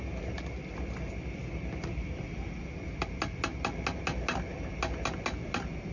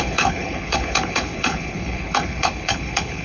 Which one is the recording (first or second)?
first